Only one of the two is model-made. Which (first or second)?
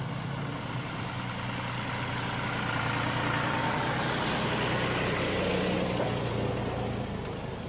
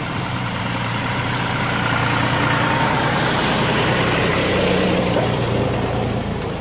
second